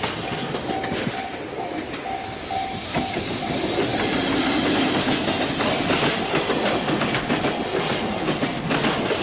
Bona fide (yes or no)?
yes